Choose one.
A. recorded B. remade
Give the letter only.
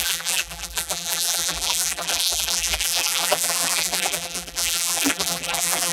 B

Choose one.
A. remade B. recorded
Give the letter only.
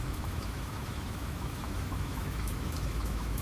A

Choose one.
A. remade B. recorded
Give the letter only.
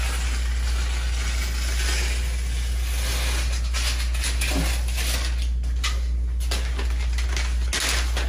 B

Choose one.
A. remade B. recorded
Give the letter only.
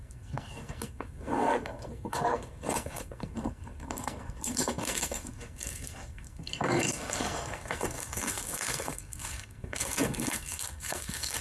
A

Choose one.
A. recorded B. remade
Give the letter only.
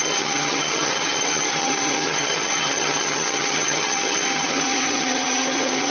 B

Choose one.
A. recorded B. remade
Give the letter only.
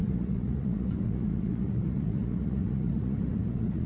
B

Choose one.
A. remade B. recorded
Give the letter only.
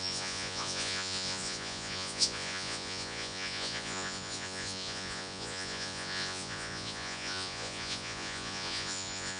A